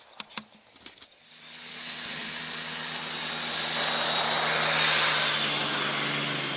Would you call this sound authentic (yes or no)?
yes